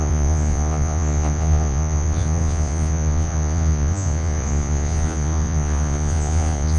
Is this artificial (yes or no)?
yes